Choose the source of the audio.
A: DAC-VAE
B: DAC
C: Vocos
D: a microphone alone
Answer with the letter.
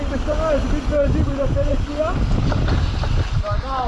D